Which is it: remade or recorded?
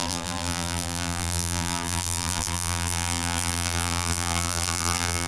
remade